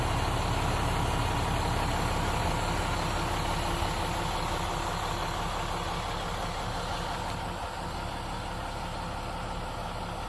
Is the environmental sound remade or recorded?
recorded